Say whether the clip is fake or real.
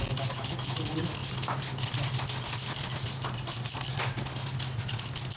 real